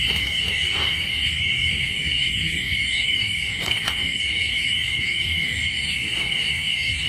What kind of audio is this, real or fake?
fake